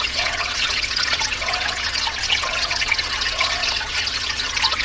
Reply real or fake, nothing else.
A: fake